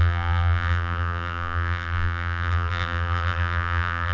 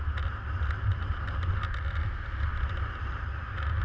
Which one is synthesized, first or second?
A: first